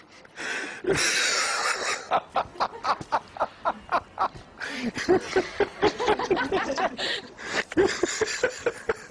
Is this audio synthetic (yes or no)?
no